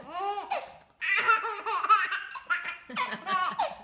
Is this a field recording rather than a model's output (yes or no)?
yes